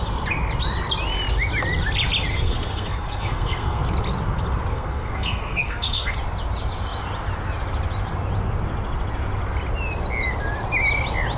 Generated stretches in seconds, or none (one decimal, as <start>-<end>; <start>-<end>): 2.3-3.8; 4.7-6.1